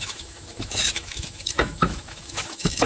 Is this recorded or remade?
remade